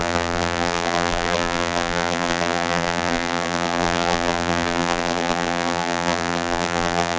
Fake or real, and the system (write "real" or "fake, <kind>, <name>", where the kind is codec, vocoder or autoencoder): fake, vocoder, BigVGAN v2